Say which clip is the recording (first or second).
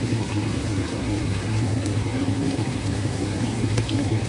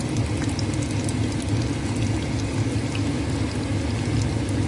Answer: second